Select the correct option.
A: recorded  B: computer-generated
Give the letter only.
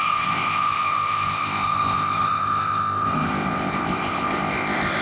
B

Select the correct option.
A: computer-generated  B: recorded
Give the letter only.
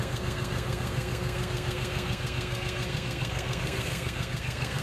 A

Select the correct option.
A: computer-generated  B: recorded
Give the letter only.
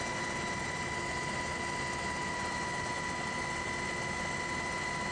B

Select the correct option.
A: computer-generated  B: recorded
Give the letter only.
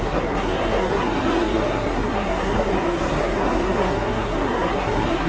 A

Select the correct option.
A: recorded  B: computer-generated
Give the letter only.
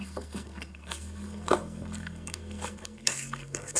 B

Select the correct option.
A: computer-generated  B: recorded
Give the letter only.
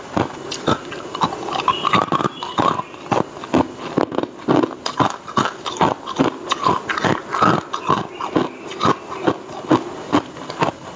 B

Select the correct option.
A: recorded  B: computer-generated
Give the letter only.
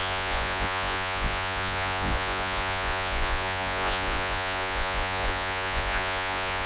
B